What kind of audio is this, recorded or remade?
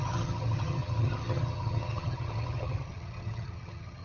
remade